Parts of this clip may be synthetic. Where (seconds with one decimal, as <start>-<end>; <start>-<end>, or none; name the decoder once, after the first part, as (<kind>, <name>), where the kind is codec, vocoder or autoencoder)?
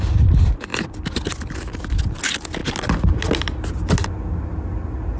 none